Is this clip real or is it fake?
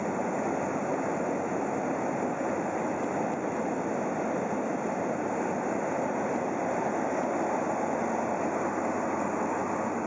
real